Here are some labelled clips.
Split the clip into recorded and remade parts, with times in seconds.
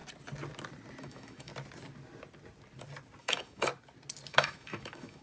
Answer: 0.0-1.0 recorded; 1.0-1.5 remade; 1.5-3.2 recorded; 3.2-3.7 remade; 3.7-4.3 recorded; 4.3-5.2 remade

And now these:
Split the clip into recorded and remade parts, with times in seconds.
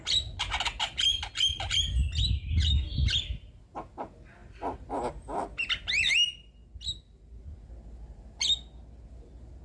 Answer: 0.0-9.6 recorded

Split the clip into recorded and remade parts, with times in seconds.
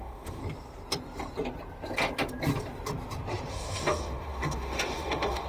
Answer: 0.0-0.4 remade; 0.4-3.5 recorded; 3.5-5.5 remade